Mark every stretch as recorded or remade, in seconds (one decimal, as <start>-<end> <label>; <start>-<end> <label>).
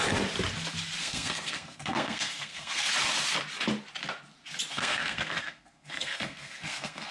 0.0-1.0 recorded; 1.0-2.9 remade; 2.9-4.7 recorded; 4.7-7.1 remade